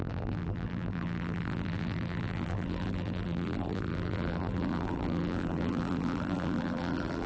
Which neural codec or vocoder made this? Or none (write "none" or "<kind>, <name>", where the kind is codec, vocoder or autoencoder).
vocoder, BigVGAN v2